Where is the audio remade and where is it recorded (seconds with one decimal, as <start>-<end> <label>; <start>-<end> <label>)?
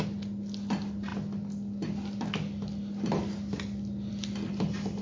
0.0-5.0 recorded